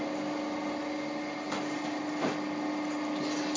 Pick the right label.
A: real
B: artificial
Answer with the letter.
A